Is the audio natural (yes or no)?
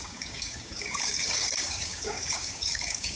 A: no